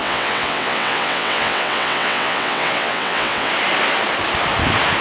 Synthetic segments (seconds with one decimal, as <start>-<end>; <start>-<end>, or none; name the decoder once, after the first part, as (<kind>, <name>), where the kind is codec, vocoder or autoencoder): 0.0-3.5 (vocoder, WaveNeXt)